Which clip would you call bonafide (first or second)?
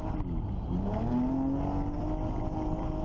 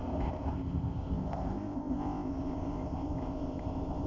first